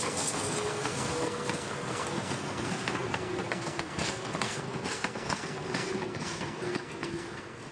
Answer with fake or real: fake